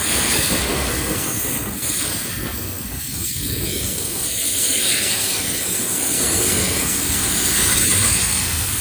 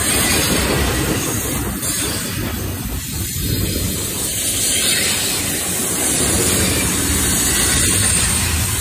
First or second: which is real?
second